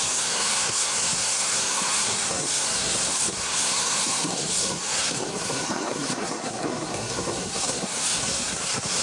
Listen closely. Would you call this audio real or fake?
fake